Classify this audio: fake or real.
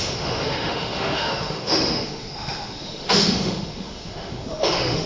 fake